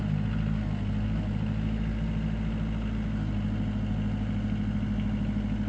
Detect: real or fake real